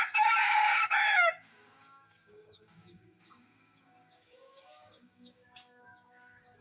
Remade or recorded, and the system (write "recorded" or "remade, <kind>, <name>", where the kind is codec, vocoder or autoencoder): remade, codec, DAC